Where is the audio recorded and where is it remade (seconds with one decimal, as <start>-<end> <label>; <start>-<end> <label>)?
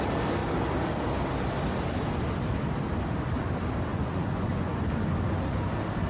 0.0-3.9 recorded; 3.9-4.8 remade; 4.8-6.1 recorded